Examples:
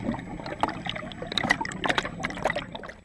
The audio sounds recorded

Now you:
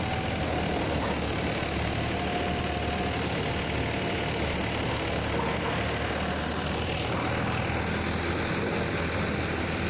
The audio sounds recorded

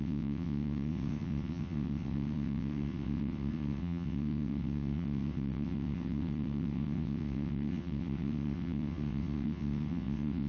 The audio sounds remade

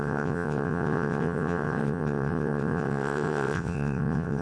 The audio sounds remade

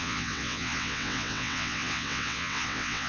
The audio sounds remade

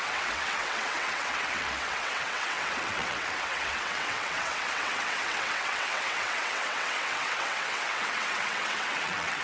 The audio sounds remade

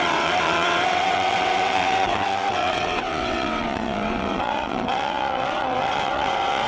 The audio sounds remade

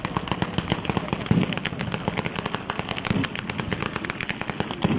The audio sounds recorded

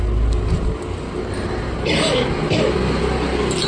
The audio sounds recorded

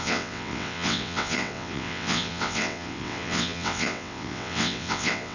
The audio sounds remade